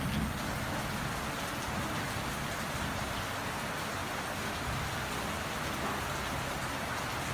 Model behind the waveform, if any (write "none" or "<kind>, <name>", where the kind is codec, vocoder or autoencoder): none